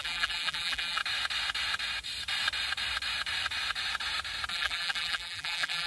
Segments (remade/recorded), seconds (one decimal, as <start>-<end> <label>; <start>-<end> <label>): 0.0-1.0 remade; 1.0-4.5 recorded; 4.5-5.9 remade